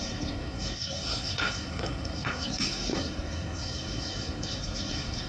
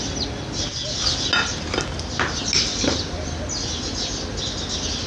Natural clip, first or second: second